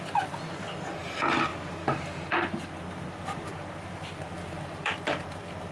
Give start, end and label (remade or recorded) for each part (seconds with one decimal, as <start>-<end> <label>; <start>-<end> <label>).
0.0-1.5 recorded; 1.5-4.9 remade; 4.9-5.7 recorded